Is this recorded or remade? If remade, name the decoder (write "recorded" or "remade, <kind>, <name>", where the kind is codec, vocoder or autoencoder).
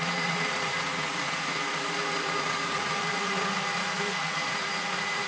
remade, vocoder, Vocos